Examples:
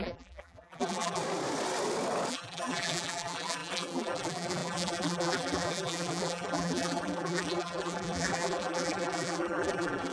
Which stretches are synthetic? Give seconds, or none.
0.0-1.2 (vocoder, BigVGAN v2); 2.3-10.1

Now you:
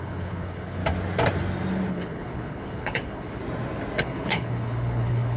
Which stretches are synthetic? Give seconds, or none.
0.0-0.8 (codec, HILCodec); 1.9-3.4; 4.0-5.4

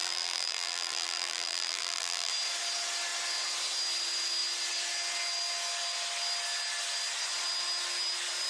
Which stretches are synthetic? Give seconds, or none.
0.0-2.3 (vocoder, BigVGAN v2)